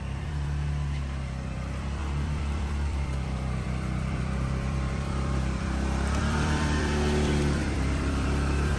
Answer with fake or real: fake